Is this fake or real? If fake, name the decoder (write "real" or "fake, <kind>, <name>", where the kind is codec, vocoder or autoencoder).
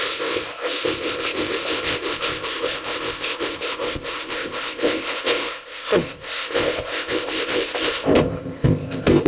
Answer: fake, codec, ZipCodec